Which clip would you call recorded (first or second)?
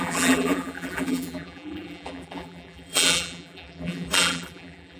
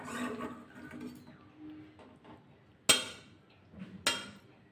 second